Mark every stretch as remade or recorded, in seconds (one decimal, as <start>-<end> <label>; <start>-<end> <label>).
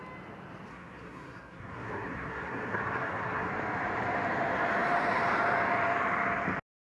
0.0-0.7 recorded; 0.7-3.5 remade; 3.5-6.9 recorded